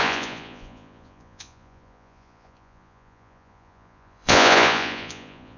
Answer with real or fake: fake